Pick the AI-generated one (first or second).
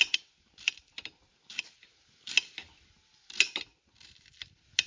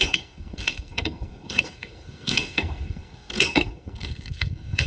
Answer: second